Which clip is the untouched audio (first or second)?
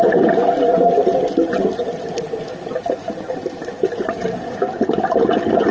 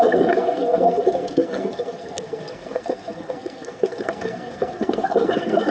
first